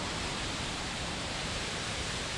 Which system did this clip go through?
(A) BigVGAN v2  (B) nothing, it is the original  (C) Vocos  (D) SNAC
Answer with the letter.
A